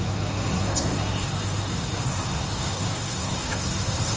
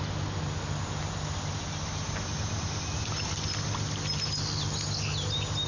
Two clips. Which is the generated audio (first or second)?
first